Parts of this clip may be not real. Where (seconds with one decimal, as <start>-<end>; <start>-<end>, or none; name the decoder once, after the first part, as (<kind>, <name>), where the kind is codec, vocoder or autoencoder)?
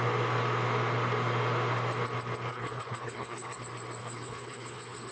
2.5-3.6 (codec, HILCodec); 4.0-5.1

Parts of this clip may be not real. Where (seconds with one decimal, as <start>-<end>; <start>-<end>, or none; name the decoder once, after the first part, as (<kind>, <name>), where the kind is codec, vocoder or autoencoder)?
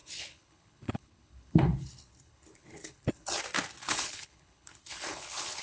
0.0-3.4 (codec, HILCodec); 3.8-5.6